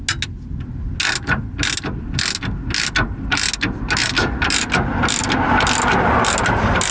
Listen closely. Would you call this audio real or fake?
real